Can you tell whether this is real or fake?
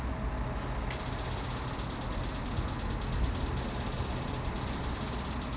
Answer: real